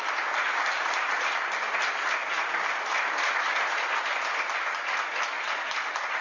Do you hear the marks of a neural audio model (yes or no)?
no